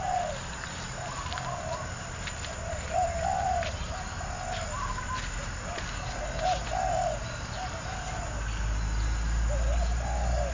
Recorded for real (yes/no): yes